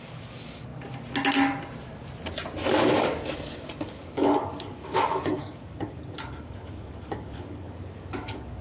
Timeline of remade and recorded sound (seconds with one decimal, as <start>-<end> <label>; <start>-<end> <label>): 0.0-0.7 remade; 0.7-2.8 recorded; 2.8-8.6 remade